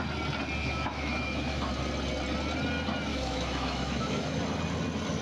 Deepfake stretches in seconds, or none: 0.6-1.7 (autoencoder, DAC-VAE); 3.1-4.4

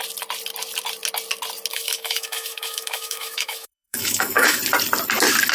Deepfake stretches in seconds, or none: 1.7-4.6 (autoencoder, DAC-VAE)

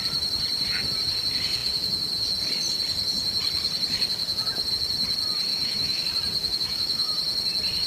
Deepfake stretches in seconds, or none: 5.5-6.0 (autoencoder, DAC-VAE); 6.4-7.1

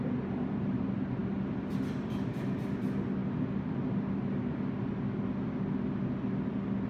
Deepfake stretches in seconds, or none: none

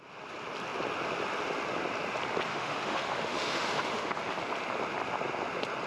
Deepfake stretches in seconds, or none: 2.5-4.2 (autoencoder, DAC-VAE)

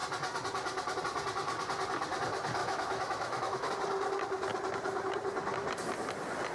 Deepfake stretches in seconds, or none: 2.6-3.7 (autoencoder, DAC-VAE)